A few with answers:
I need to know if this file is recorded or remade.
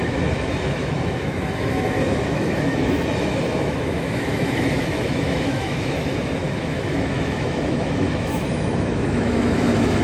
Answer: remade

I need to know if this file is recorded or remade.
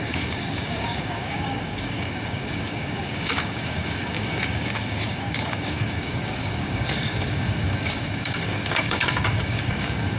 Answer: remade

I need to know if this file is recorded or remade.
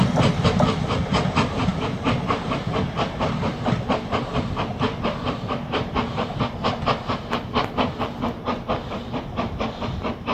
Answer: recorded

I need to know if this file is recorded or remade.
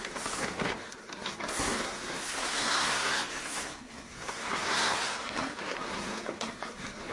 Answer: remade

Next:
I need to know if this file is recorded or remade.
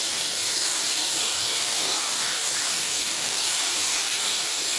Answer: remade